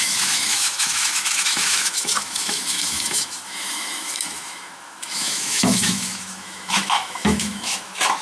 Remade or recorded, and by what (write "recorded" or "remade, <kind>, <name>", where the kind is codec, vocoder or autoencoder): remade, autoencoder, DAC-VAE